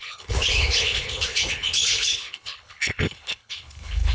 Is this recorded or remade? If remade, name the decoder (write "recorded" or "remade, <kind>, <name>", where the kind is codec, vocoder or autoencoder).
remade, codec, HILCodec